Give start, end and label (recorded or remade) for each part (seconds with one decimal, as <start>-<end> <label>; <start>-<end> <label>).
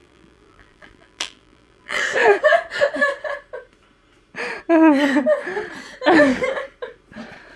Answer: 0.0-2.0 remade; 2.0-7.6 recorded